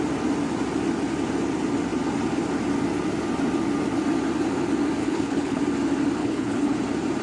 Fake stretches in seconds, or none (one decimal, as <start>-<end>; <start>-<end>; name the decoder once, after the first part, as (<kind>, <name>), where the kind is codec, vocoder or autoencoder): 5.0-5.6 (codec, HILCodec); 6.2-6.8